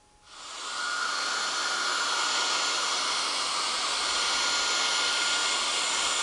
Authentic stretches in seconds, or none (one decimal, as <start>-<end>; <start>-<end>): 0.0-6.2